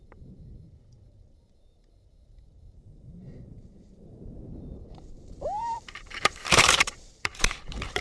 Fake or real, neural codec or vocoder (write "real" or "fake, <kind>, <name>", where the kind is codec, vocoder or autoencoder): fake, vocoder, BigVGAN v2